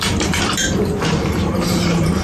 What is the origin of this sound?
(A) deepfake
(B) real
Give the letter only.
A